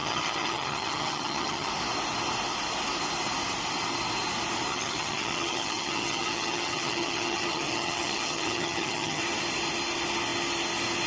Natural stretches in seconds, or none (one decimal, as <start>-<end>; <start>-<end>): 1.7-4.7; 9.2-11.1